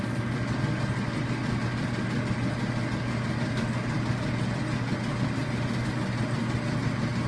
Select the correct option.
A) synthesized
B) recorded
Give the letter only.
B